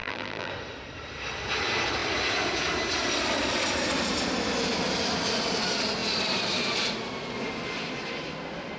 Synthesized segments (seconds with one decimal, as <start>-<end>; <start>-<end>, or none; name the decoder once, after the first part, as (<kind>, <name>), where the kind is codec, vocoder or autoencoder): 0.0-0.5 (vocoder, BigVGAN v2)